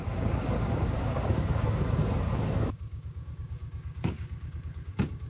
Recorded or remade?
remade